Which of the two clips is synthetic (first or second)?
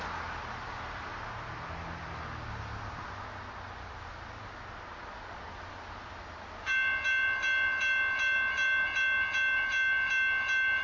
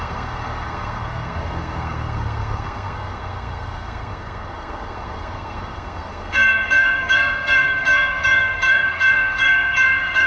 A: second